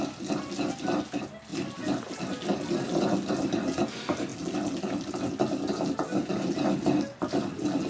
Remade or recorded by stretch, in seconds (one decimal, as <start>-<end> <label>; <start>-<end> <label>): 0.0-7.9 recorded